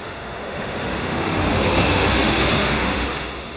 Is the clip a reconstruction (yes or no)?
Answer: yes